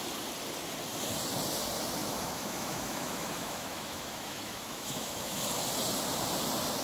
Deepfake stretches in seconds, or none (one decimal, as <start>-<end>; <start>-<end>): 2.0-5.4